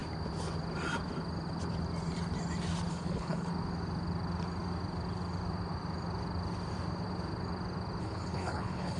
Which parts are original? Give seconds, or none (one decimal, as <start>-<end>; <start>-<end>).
0.0-2.9; 3.5-8.0